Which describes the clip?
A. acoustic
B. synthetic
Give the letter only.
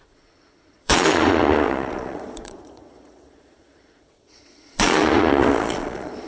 B